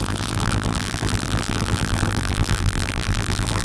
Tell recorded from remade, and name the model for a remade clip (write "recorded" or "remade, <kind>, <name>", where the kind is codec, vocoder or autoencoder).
remade, vocoder, BigVGAN v2